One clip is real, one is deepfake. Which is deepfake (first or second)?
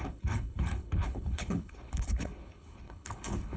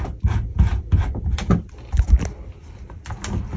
first